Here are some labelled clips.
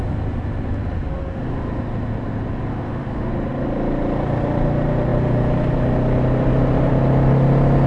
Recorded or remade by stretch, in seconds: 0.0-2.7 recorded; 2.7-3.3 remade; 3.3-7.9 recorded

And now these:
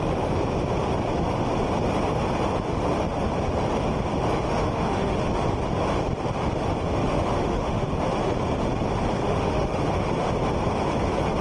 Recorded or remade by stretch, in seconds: 0.0-4.5 recorded; 4.5-5.2 remade; 5.2-7.0 recorded; 7.0-8.0 remade; 8.0-9.2 recorded; 9.2-9.8 remade; 9.8-11.4 recorded